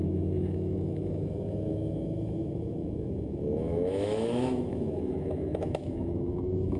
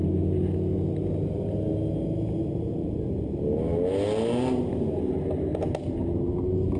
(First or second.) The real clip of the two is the second